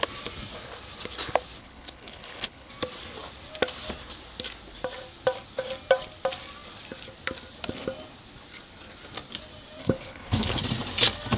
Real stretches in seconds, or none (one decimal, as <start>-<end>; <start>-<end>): 0.0-1.6; 2.7-9.8; 10.6-11.4